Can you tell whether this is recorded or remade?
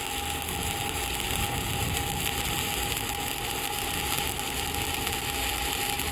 recorded